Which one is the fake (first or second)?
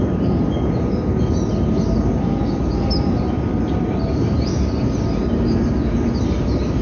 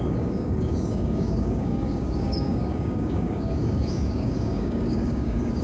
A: second